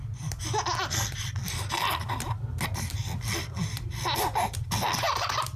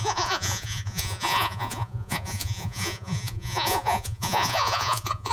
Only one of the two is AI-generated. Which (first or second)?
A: second